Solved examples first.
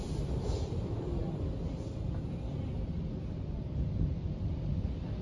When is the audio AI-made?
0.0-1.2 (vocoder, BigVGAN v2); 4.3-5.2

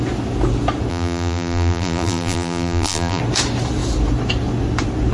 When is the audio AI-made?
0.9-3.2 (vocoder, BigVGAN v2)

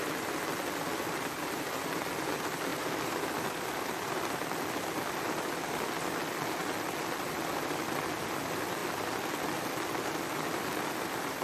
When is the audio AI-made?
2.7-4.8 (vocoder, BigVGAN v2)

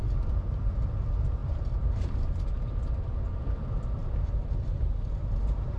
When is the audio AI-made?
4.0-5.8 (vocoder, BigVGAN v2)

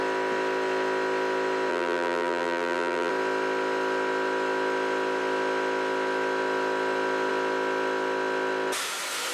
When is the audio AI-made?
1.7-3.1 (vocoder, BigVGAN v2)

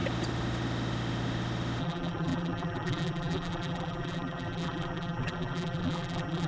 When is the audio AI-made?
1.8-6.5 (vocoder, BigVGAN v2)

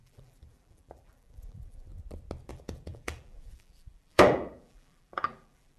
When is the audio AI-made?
0.0-1.9 (vocoder, BigVGAN v2); 2.5-5.8